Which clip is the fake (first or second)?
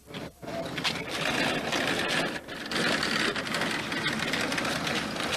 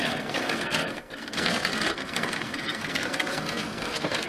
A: second